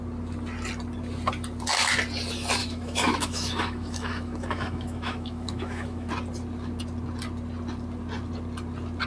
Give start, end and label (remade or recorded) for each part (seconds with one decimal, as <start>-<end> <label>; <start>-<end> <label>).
0.0-2.6 recorded; 2.6-6.1 remade; 6.1-9.1 recorded